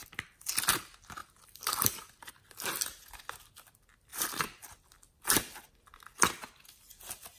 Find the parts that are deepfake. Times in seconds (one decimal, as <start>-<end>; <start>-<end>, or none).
1.2-2.3; 4.1-5.7